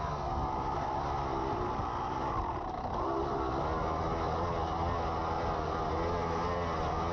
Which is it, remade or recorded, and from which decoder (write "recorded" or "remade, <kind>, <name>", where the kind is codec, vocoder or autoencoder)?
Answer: recorded